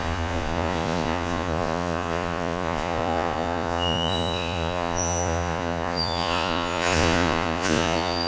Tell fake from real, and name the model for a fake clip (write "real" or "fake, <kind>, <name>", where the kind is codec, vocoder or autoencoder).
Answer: fake, vocoder, Vocos